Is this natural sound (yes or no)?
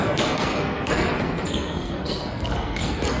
no